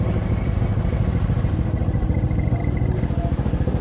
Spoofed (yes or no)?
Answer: no